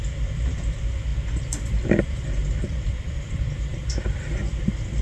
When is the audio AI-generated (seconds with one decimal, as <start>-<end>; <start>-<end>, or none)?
0.0-5.0